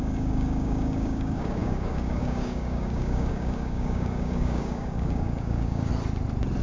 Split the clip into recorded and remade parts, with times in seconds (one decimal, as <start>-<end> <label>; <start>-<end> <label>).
0.0-5.9 remade; 5.9-6.6 recorded